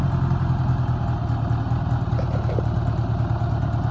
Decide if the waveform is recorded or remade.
recorded